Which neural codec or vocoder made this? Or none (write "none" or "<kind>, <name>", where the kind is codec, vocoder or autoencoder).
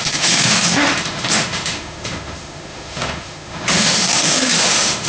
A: autoencoder, DAC-VAE